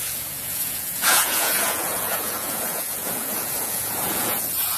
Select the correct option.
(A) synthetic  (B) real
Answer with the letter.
A